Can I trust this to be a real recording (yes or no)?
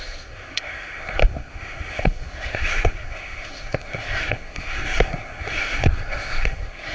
no